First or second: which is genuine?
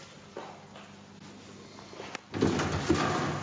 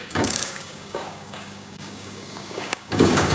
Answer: first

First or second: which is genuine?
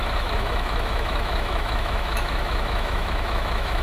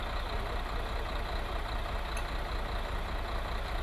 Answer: second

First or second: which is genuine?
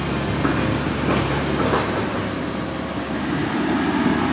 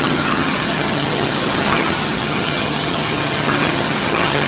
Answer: first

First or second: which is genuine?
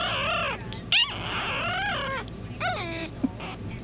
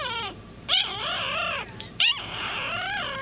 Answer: first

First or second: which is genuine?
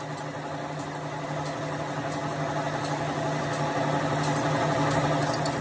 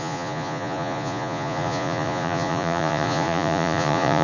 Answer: first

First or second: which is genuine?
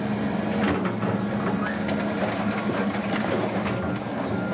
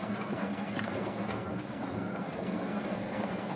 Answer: first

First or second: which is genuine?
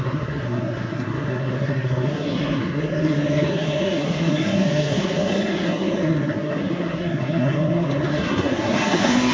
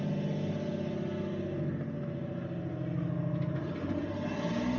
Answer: second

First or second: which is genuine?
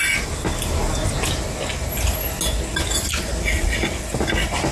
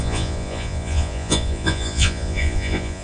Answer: first